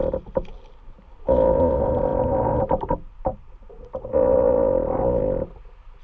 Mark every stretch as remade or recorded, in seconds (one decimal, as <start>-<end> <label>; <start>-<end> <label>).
0.0-6.0 recorded